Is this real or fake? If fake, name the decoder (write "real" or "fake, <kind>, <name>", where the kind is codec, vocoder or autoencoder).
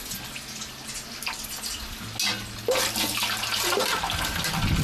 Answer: real